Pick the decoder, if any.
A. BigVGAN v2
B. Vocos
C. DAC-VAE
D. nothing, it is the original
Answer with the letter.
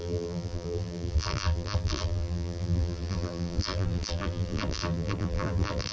A